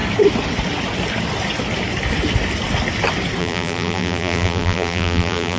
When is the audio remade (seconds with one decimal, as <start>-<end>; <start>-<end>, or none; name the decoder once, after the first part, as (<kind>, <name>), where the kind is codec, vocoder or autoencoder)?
3.4-5.6 (vocoder, BigVGAN v2)